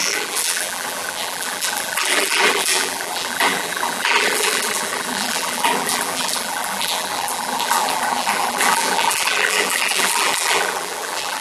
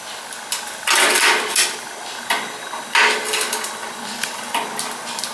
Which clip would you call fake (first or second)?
first